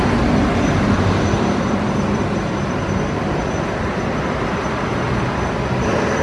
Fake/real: fake